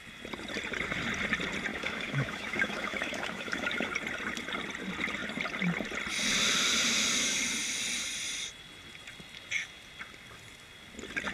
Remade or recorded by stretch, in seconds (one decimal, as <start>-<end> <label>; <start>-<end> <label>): 0.0-1.7 recorded; 1.7-3.9 remade; 3.9-11.3 recorded